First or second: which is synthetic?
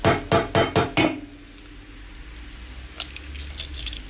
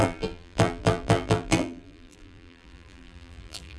second